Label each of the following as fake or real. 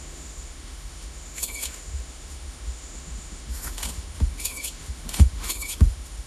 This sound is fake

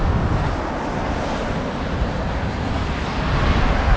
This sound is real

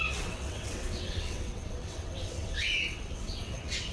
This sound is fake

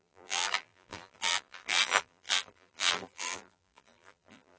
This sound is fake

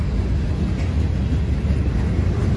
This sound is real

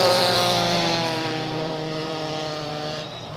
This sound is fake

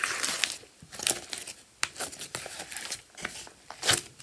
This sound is real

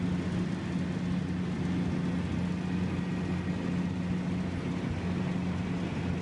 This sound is real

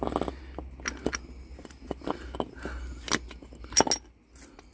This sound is real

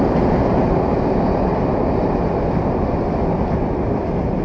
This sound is real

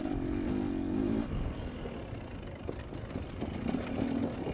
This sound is real